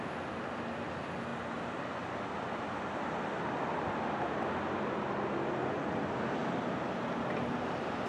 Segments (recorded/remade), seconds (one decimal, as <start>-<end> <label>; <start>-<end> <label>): 0.0-8.1 recorded